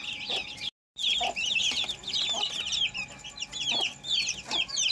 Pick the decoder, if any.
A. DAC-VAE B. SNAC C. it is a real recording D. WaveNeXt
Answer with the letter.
C